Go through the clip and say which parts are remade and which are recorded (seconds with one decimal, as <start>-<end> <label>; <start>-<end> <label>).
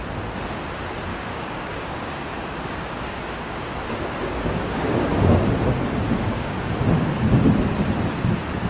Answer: 0.0-1.1 recorded; 1.1-5.5 remade; 5.5-6.2 recorded; 6.2-6.8 remade; 6.8-8.7 recorded